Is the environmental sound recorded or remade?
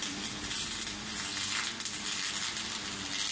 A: recorded